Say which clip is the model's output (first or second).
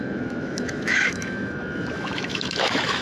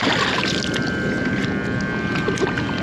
first